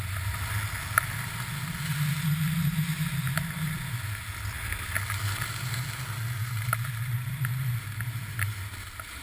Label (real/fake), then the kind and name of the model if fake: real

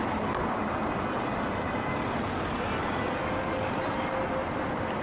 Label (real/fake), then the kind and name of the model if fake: real